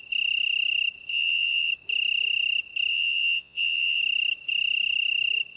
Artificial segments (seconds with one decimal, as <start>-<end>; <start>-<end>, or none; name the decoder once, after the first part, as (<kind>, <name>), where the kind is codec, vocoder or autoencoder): 1.1-1.7 (vocoder, Vocos); 2.9-4.0